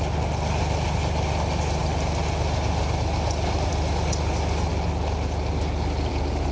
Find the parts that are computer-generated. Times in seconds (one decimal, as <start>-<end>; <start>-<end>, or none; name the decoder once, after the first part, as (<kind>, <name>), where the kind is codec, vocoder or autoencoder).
none